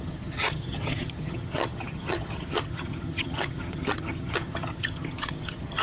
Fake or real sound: fake